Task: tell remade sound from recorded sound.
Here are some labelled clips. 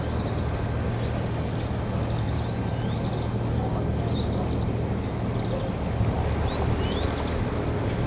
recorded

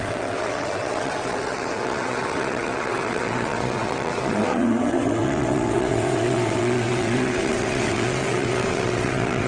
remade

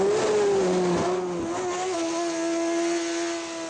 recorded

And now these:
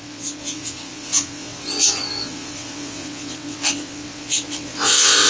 remade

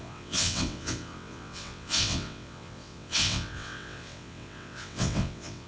remade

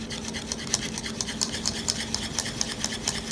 recorded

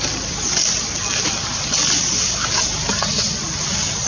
recorded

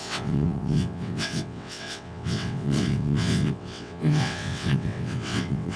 remade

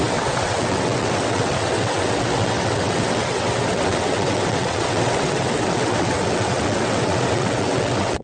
remade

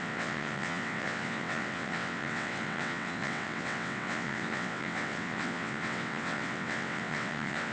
remade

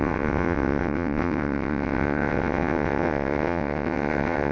remade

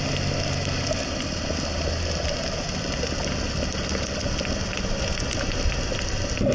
recorded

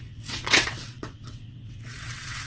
remade